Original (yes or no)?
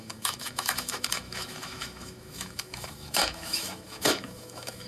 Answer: no